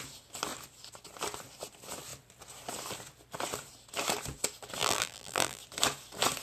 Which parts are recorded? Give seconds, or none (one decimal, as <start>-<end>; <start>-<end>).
0.0-4.8; 5.6-6.4